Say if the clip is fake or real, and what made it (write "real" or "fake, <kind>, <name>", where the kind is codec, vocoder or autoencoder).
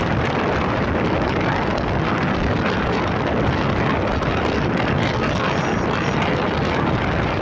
real